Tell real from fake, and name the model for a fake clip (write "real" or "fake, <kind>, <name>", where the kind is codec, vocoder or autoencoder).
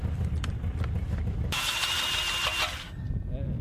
real